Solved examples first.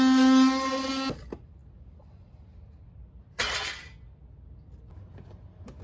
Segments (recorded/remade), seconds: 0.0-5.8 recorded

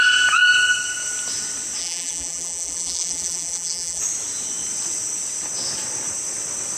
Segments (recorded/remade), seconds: 0.0-1.8 recorded; 1.8-4.0 remade; 4.0-6.8 recorded

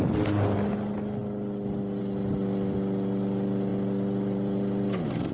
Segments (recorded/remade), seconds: 0.0-3.7 recorded; 3.7-5.3 remade

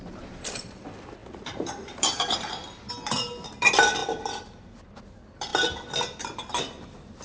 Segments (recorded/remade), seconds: 0.0-5.5 remade; 5.5-6.5 recorded; 6.5-7.2 remade

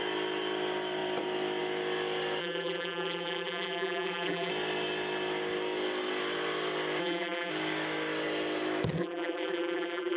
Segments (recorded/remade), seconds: 0.0-2.4 recorded; 2.4-4.5 remade; 4.5-7.0 recorded; 7.0-7.5 remade; 7.5-9.0 recorded; 9.0-10.2 remade